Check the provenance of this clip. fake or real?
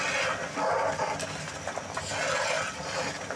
real